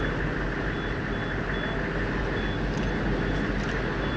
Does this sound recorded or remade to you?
recorded